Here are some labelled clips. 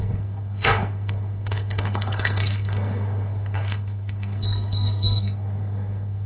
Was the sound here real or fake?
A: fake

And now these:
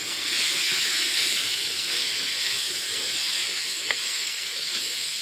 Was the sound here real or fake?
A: fake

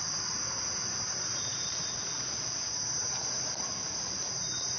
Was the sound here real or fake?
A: real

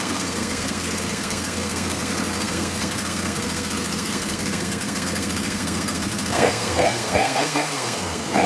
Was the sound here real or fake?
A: fake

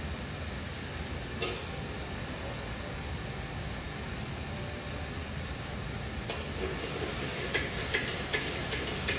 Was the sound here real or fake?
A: real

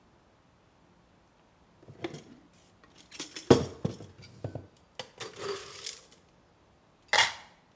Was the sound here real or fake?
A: real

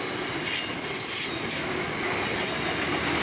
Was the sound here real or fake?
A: real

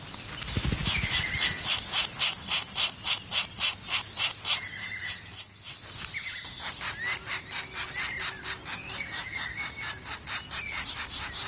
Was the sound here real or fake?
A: real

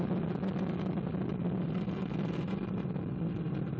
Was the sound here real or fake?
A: real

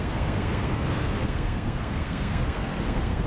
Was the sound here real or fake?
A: fake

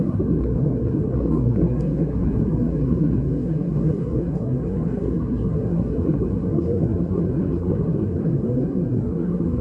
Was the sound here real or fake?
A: fake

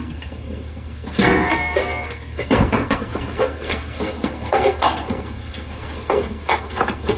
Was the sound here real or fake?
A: fake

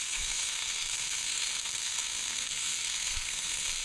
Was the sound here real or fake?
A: fake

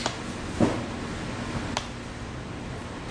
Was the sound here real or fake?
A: real